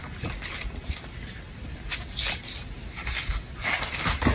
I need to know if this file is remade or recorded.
recorded